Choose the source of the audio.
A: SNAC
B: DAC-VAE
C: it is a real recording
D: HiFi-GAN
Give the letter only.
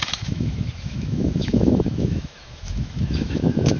B